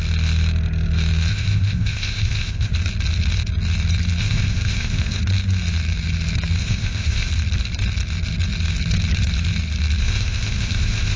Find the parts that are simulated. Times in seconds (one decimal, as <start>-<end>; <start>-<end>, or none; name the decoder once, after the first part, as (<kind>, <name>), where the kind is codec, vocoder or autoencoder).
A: 1.3-2.7 (codec, ZipCodec); 4.2-5.2; 6.6-7.3; 10.0-11.2